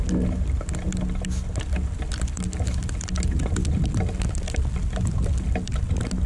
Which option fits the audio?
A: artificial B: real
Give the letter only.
B